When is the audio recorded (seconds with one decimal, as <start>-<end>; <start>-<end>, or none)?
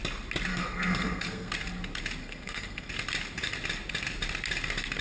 0.0-0.5; 1.5-2.2; 2.9-5.0